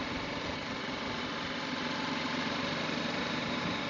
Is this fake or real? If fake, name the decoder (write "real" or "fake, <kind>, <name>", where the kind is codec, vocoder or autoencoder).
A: fake, vocoder, BigVGAN v2